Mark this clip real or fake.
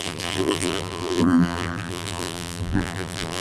fake